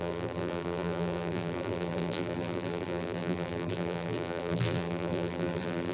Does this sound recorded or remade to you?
remade